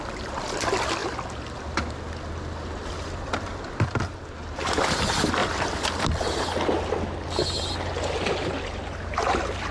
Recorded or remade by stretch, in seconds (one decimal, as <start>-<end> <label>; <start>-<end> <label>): 0.0-9.7 recorded